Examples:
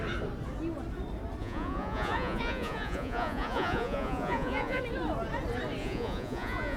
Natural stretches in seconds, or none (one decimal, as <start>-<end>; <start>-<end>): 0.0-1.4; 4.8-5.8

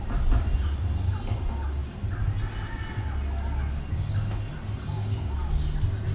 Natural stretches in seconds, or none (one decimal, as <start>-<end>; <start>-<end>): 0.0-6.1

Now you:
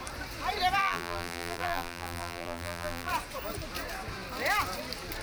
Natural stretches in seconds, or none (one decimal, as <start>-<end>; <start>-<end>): 0.0-0.8; 3.1-5.2

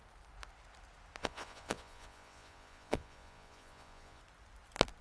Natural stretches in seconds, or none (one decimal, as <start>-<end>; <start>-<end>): 0.0-1.2; 4.2-5.0

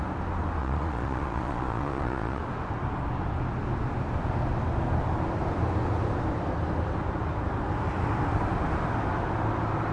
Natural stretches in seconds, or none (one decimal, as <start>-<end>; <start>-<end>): 0.0-0.6; 2.4-9.9